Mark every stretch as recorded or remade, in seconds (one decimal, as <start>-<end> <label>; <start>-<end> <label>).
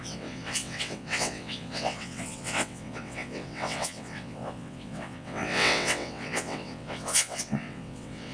0.0-8.3 remade